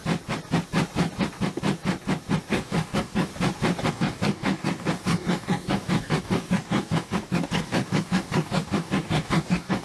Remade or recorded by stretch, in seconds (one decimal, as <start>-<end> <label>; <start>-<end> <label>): 0.0-2.5 recorded; 2.5-3.3 remade; 3.3-3.9 recorded; 3.9-9.8 remade